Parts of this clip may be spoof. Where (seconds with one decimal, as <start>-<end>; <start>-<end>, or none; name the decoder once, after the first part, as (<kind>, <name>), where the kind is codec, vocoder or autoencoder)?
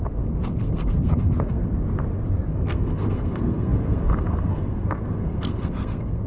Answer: 0.0-1.7 (codec, SNAC); 2.5-6.3